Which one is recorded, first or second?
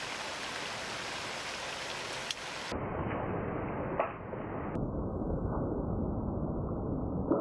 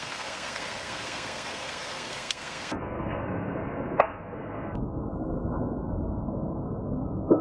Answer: first